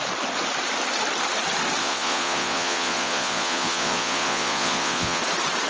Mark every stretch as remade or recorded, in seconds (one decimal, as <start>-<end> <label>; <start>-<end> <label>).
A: 0.0-1.8 recorded; 1.8-5.2 remade; 5.2-5.7 recorded